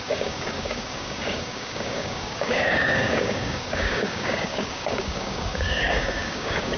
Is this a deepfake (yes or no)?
yes